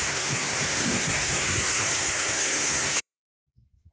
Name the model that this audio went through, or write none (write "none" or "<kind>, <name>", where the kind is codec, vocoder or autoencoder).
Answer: codec, SNAC